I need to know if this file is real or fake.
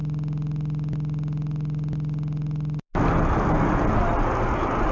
real